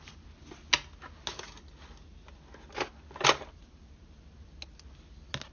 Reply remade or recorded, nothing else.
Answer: recorded